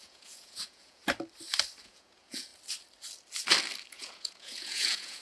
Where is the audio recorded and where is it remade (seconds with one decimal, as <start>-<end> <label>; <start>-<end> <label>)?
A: 0.0-1.0 remade; 1.0-1.8 recorded; 1.8-2.5 remade; 2.5-3.9 recorded; 3.9-5.2 remade